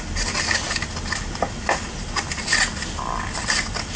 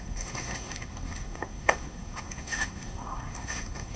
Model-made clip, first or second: second